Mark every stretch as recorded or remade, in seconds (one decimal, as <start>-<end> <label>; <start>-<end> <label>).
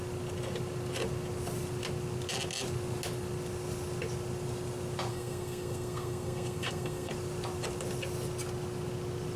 0.0-5.1 recorded; 5.1-7.1 remade; 7.1-9.4 recorded